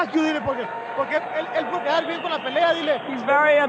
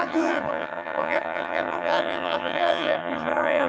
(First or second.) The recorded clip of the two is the first